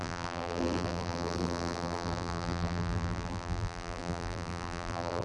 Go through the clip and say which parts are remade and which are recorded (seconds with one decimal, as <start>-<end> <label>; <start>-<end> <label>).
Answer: 0.0-5.2 remade